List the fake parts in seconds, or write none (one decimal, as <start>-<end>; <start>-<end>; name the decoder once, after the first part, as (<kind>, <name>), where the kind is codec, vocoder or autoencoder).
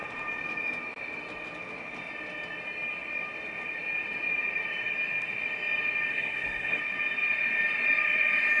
6.1-6.8 (codec, SNAC)